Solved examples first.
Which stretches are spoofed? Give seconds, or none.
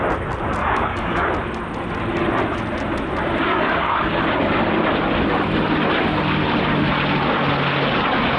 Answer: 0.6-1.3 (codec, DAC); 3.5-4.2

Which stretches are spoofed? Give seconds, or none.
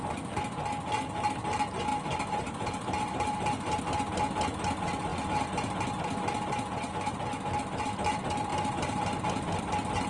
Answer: 1.9-3.8 (vocoder, BigVGAN v2); 8.5-9.6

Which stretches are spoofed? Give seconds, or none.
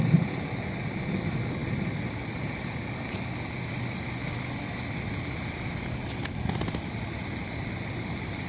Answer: none